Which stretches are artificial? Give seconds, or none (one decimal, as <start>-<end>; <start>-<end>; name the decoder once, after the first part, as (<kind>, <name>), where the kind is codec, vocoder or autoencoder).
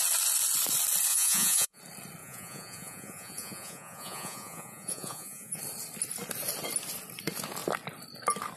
1.1-1.8 (vocoder, Vocos); 2.2-5.6